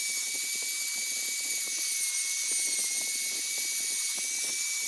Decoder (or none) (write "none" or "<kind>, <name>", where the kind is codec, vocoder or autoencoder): none